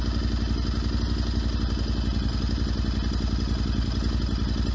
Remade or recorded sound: recorded